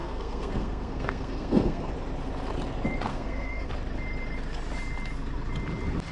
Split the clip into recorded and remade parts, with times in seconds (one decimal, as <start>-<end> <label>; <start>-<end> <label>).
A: 0.0-1.9 remade; 1.9-3.1 recorded; 3.1-3.7 remade; 3.7-6.1 recorded